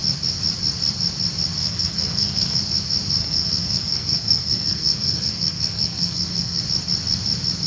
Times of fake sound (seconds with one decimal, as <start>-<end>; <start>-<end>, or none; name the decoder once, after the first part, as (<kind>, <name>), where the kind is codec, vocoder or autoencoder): 1.6-2.6 (codec, SNAC); 3.2-6.6